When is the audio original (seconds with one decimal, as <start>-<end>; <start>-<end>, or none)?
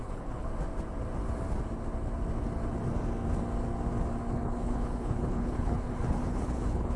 0.5-4.3